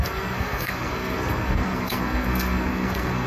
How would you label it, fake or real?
fake